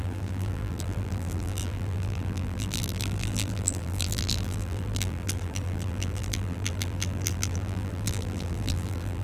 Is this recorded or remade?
remade